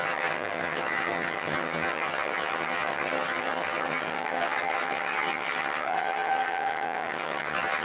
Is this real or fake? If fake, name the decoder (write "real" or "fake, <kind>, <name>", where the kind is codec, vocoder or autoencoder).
fake, vocoder, HiFi-GAN